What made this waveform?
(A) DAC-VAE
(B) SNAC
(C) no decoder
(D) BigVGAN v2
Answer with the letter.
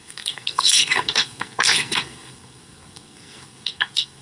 B